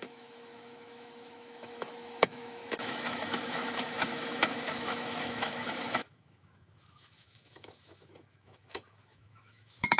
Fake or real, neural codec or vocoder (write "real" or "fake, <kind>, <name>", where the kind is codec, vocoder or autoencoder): fake, autoencoder, DAC-VAE